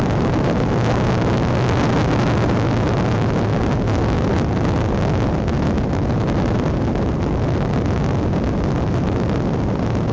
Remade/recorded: recorded